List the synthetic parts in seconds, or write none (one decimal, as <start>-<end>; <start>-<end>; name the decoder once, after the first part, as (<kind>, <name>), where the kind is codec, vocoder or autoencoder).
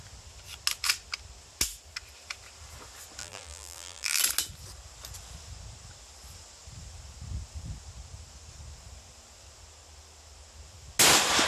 3.2-4.2 (vocoder, BigVGAN v2)